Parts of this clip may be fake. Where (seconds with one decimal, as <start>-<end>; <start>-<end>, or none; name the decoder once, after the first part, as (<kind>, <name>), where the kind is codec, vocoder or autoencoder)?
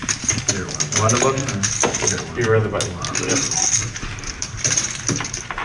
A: 0.0-2.6 (vocoder, BigVGAN v2); 3.3-5.6